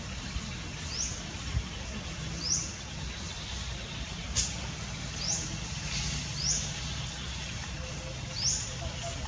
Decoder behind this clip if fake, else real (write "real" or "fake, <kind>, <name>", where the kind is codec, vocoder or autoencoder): real